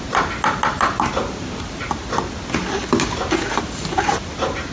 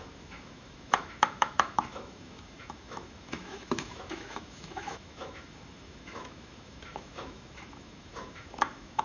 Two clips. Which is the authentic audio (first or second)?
first